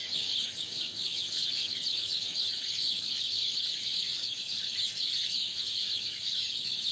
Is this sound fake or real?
fake